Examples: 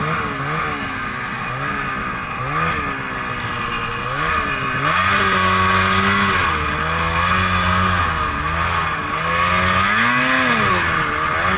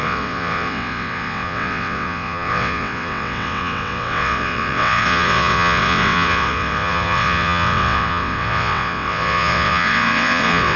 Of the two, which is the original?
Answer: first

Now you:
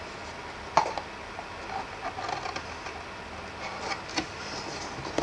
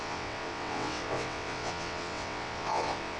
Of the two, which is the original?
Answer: first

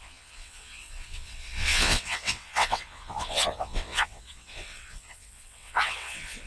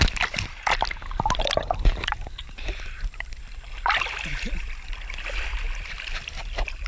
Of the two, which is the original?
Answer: second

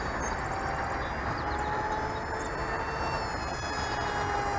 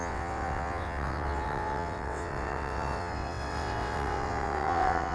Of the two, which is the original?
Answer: first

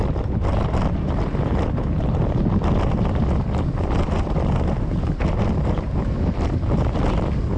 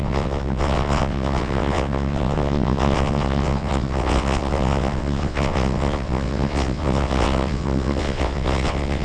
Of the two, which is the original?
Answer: first